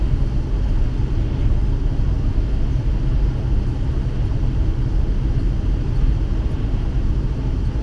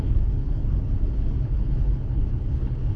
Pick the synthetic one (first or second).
second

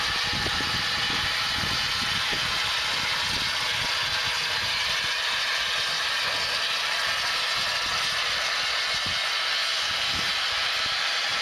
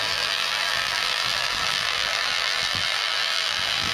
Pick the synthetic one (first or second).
second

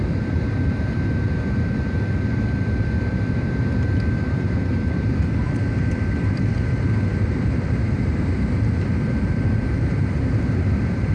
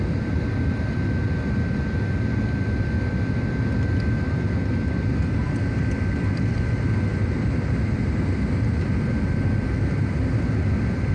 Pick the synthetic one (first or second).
first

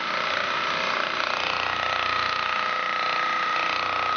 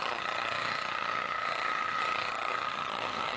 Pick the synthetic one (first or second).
second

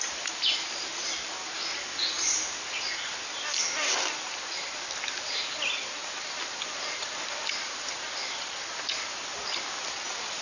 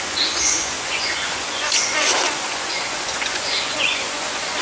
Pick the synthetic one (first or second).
second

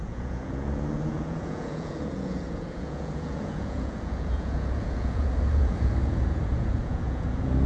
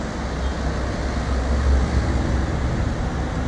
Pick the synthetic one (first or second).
first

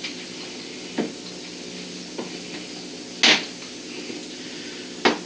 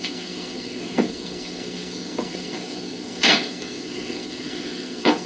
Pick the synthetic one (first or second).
second